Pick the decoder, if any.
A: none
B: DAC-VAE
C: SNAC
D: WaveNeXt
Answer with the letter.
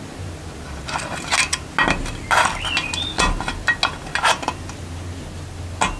A